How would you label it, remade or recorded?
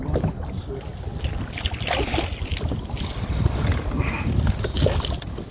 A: recorded